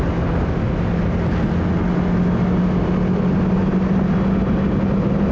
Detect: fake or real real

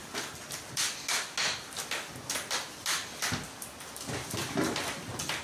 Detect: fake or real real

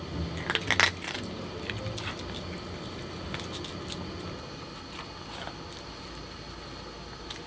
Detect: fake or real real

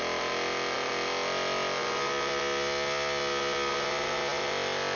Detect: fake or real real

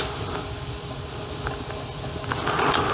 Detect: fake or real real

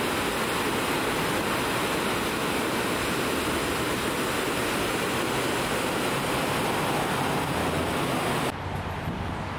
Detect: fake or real real